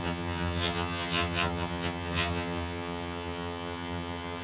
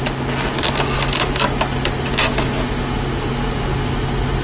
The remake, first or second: first